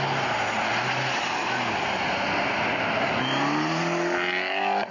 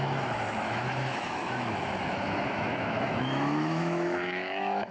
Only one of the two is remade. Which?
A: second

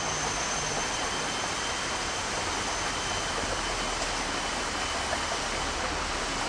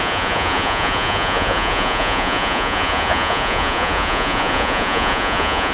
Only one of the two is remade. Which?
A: second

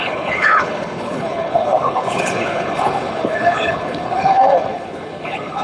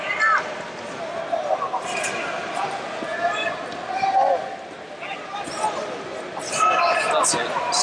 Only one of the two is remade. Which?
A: first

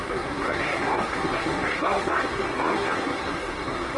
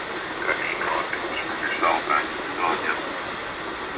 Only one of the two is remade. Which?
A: first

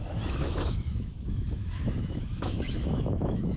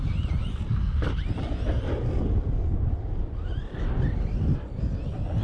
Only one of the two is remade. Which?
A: first